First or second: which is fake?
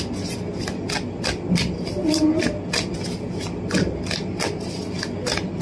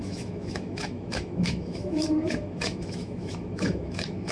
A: second